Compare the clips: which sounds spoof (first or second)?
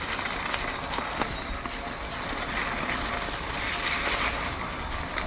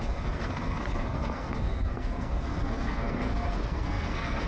second